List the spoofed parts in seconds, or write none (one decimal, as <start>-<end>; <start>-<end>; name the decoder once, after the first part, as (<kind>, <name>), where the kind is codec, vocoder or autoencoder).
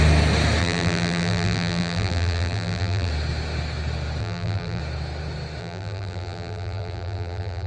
0.6-3.1 (vocoder, BigVGAN v2); 4.2-4.8; 5.6-7.7